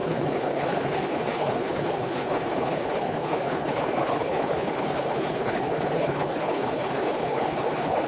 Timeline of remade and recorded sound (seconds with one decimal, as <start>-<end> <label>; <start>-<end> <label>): 0.0-8.1 remade